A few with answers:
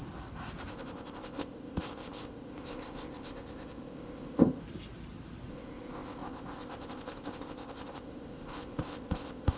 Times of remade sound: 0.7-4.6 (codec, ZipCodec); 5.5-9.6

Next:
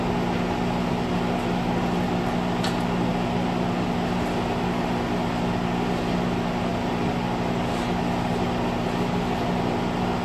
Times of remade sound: none